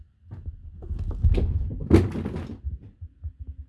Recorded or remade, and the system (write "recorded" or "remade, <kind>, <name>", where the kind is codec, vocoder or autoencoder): recorded